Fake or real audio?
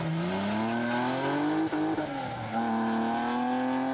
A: real